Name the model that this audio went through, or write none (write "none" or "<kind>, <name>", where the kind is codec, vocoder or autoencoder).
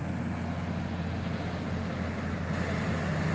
none